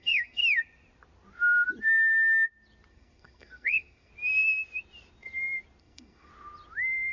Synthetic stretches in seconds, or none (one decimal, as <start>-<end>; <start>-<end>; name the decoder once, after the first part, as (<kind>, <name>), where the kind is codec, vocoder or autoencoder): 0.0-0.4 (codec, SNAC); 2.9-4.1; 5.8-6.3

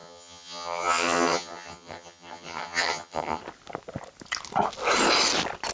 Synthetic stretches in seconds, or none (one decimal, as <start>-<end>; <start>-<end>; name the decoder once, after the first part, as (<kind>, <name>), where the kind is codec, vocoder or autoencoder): 0.0-3.4 (vocoder, HiFi-GAN)

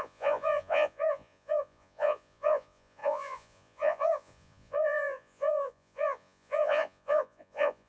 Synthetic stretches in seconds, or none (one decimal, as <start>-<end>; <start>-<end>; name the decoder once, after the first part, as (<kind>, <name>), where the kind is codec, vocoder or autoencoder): 0.0-7.9 (vocoder, Vocos)